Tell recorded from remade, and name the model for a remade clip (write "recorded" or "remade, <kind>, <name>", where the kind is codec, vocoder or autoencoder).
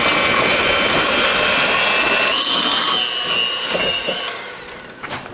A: recorded